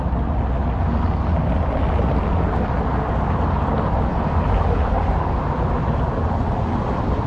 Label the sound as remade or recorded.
recorded